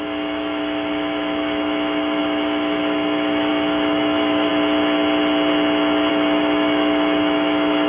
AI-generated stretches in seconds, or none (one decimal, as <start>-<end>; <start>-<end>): 0.0-4.5; 6.1-7.9